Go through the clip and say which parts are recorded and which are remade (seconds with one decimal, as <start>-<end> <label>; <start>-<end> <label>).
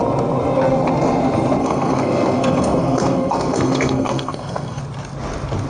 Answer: 0.0-1.6 recorded; 1.6-4.8 remade; 4.8-5.7 recorded